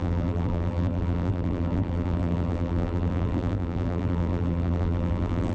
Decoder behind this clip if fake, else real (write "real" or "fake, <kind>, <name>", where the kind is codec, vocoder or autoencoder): fake, vocoder, BigVGAN v2